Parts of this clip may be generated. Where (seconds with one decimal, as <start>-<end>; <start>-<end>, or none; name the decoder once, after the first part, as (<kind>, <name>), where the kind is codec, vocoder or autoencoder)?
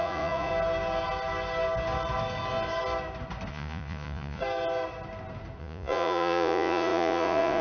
0.0-0.5 (vocoder, Vocos); 3.5-4.4; 5.6-7.6